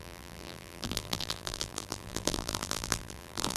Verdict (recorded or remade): remade